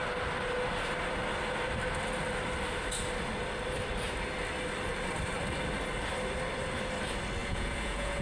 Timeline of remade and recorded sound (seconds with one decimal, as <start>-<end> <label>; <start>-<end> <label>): 0.0-7.4 recorded; 7.4-8.2 remade